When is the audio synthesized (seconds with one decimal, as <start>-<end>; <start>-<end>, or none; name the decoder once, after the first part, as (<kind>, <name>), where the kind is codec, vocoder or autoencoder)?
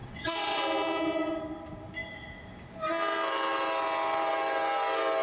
0.0-0.6 (vocoder, WaveNeXt)